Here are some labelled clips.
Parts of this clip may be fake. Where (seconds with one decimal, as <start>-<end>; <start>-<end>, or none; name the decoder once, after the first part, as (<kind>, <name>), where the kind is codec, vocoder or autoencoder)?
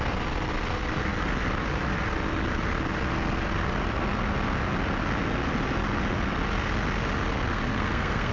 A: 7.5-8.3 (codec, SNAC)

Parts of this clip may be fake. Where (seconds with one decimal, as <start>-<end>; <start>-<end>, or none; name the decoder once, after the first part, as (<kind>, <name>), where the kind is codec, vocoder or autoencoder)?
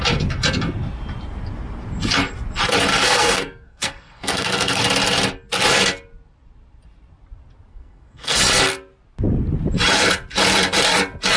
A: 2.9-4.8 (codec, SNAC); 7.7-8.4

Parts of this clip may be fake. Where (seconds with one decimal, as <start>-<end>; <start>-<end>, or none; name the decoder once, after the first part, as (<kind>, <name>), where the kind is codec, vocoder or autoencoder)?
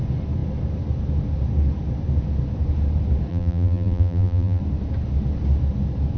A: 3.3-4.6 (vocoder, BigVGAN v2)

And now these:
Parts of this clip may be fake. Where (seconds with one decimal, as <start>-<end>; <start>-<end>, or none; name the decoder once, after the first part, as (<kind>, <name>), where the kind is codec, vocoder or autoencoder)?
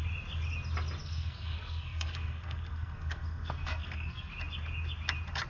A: 1.0-4.3 (codec, SNAC)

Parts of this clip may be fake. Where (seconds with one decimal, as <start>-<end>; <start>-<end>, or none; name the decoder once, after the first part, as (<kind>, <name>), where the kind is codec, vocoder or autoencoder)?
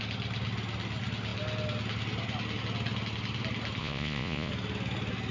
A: 3.8-4.5 (vocoder, Vocos)